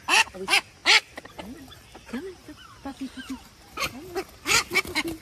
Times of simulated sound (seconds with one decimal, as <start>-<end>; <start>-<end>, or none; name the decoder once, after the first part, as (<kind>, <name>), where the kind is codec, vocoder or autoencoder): 2.9-3.7 (vocoder, BigVGAN v2)